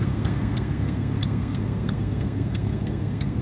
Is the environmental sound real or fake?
fake